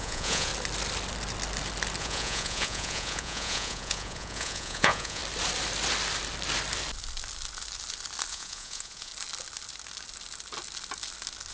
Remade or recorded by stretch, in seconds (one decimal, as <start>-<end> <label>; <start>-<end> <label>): 0.0-0.5 remade; 0.5-2.0 recorded; 2.0-5.2 remade; 5.2-8.3 recorded; 8.3-9.1 remade; 9.1-11.5 recorded